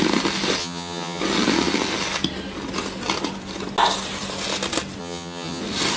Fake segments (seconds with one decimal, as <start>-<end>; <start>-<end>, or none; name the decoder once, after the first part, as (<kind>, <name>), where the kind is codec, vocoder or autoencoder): 0.6-1.2 (vocoder, HiFi-GAN); 5.0-5.6